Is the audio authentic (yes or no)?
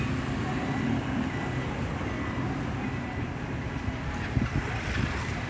yes